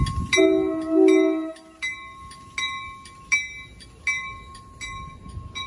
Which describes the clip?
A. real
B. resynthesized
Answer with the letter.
A